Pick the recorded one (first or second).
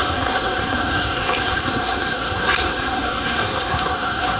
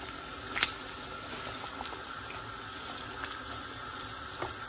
second